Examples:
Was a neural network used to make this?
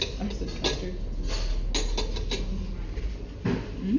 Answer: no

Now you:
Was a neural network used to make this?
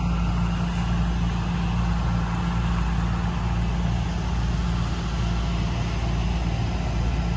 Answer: no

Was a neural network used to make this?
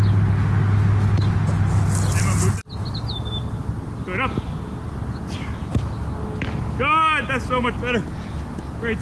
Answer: no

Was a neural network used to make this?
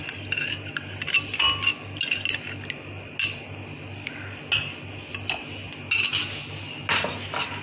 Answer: no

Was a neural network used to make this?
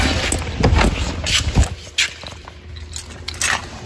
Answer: no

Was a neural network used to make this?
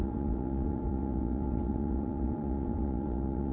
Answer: yes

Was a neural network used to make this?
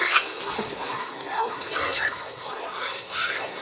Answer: yes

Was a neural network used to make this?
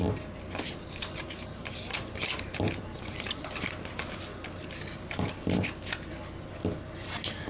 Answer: no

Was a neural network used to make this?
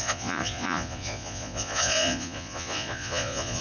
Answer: yes